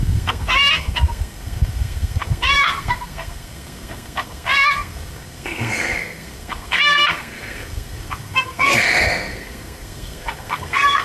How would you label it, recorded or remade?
remade